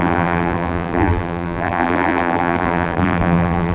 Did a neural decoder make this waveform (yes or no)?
yes